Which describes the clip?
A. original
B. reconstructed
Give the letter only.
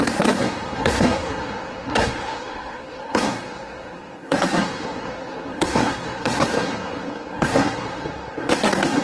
B